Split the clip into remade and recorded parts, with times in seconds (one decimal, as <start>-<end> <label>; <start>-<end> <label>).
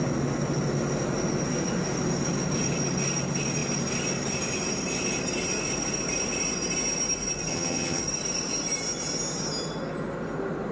0.0-7.5 recorded; 7.5-8.0 remade; 8.0-10.7 recorded